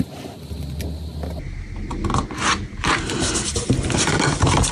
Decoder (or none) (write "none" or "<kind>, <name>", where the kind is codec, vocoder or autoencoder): none